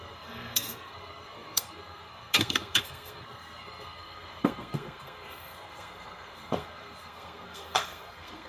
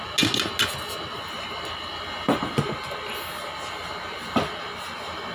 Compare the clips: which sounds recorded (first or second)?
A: second